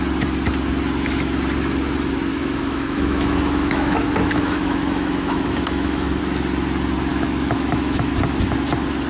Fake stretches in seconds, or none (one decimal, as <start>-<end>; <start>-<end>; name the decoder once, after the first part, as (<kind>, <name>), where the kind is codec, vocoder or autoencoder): 2.3-6.2 (autoencoder, DAC-VAE); 7.1-8.1